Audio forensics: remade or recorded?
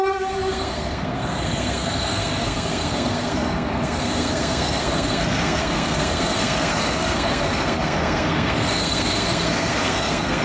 remade